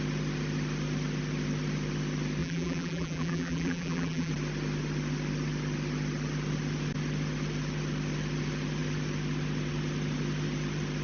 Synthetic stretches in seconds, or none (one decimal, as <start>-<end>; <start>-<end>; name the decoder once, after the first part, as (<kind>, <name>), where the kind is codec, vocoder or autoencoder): 2.4-4.3 (vocoder, BigVGAN v2)